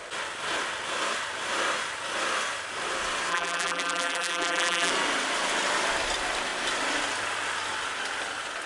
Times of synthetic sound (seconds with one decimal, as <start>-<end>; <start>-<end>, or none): 3.3-4.9